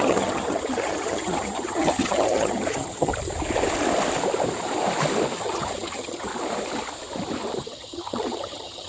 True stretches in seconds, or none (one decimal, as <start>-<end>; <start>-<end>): 3.1-5.4; 6.3-7.6